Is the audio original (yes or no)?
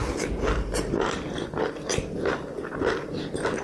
yes